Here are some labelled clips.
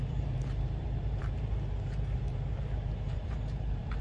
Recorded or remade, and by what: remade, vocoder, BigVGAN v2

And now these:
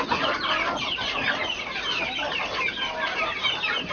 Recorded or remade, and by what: recorded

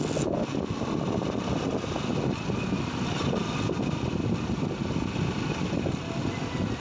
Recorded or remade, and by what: recorded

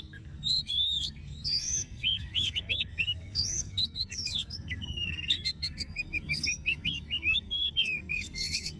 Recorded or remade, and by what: remade, codec, SNAC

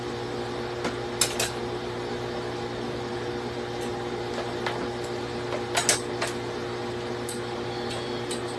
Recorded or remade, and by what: recorded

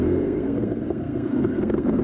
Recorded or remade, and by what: remade, codec, SNAC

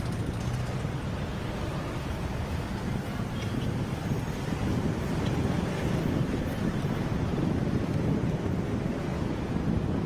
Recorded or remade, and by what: recorded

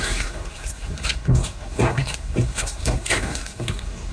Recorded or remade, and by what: remade, codec, SNAC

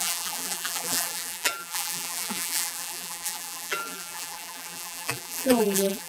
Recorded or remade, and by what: remade, vocoder, BigVGAN v2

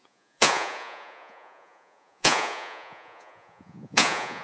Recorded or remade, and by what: remade, vocoder, Vocos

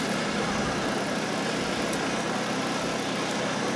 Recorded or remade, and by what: recorded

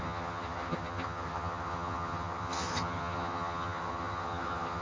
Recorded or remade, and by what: remade, vocoder, HiFi-GAN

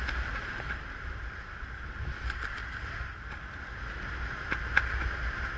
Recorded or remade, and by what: recorded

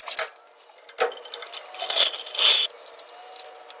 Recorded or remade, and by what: recorded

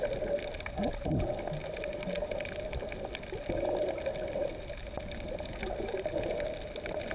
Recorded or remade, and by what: recorded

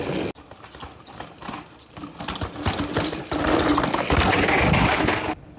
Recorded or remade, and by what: recorded